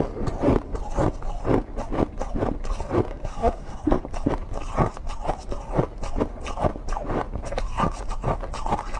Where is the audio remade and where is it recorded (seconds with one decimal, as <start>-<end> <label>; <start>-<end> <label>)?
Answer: 0.0-3.1 recorded; 3.1-4.0 remade; 4.0-9.0 recorded